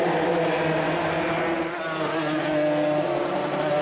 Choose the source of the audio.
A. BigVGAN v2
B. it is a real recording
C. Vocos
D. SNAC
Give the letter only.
B